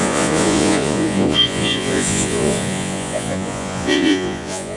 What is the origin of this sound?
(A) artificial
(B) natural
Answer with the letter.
A